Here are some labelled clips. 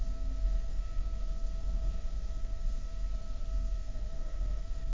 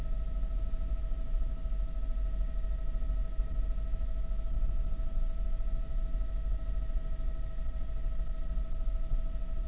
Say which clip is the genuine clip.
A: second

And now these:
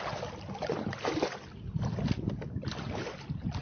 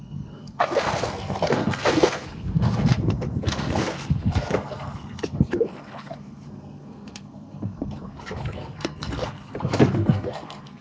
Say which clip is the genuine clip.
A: first